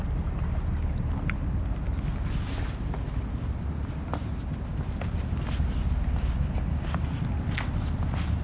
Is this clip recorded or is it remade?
recorded